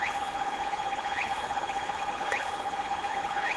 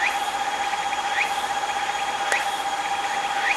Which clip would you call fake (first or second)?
first